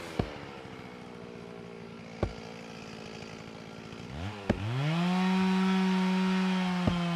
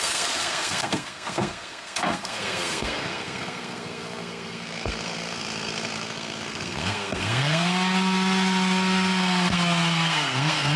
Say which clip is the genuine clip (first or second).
first